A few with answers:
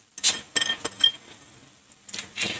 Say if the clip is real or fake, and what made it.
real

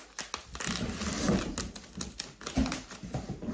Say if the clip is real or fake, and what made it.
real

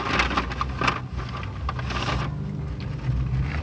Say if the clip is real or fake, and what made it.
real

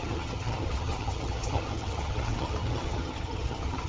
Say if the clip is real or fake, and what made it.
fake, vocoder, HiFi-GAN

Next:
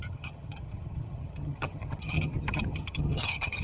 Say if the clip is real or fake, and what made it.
fake, vocoder, HiFi-GAN